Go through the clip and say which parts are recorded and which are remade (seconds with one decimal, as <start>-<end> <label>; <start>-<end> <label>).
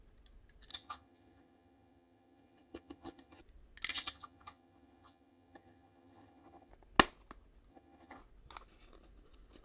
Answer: 0.0-0.7 recorded; 0.7-3.4 remade; 3.4-3.9 recorded; 3.9-6.7 remade; 6.7-7.7 recorded; 7.7-8.2 remade; 8.2-9.6 recorded